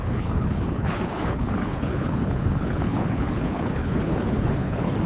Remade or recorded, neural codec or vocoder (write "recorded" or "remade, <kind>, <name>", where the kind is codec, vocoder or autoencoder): remade, codec, HILCodec